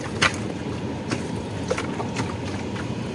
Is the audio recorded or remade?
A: recorded